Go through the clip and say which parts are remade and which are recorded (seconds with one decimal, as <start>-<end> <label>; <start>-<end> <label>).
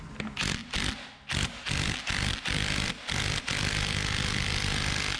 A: 0.0-5.2 recorded